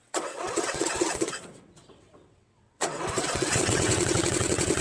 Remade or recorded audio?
remade